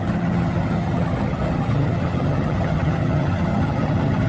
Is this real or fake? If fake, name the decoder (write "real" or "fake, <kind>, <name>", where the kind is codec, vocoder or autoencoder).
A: fake, vocoder, HiFi-GAN